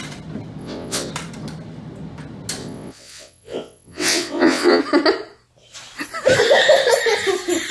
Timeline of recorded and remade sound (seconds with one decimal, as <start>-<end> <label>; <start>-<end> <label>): 0.0-0.6 recorded; 0.6-1.1 remade; 1.1-2.6 recorded; 2.6-4.8 remade; 4.8-7.7 recorded